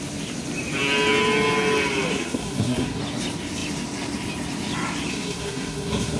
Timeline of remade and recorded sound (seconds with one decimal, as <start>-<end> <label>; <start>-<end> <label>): 0.0-2.1 recorded; 2.1-3.0 remade; 3.0-5.1 recorded; 5.1-6.2 remade